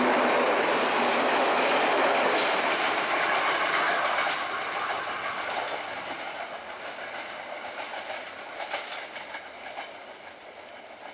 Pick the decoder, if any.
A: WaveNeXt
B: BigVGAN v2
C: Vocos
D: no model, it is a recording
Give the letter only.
D